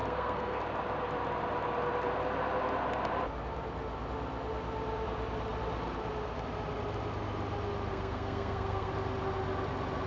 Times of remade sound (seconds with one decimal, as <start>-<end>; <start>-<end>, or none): 0.0-0.6; 7.9-8.9